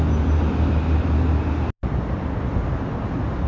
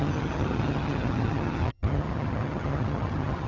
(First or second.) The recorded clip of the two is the first